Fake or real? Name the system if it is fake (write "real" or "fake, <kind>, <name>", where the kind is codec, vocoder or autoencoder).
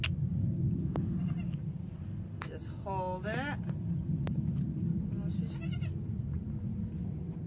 real